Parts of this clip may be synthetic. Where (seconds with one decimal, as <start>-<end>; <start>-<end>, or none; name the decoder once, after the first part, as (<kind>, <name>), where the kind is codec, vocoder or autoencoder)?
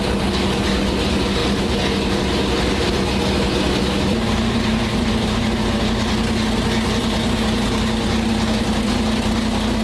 none